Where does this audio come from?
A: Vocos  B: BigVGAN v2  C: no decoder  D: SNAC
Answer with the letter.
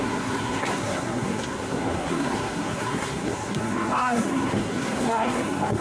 D